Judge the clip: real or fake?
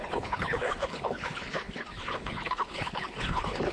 fake